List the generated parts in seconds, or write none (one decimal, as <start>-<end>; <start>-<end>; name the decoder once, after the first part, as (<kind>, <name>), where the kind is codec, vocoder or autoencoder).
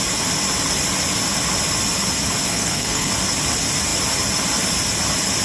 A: 2.5-3.1 (codec, SNAC)